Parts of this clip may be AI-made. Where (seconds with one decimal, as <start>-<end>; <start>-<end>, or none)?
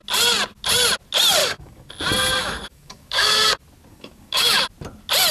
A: 1.4-1.9; 2.4-3.5; 3.9-4.6